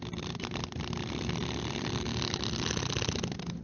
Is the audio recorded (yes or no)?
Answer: yes